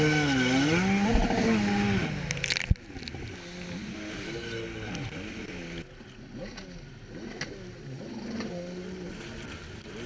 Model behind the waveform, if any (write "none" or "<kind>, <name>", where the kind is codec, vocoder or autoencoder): none